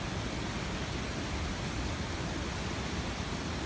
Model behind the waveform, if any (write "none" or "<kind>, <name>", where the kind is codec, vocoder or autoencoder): none